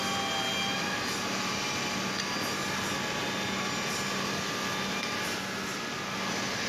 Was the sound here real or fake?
real